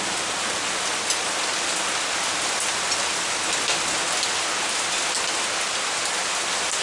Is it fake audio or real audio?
real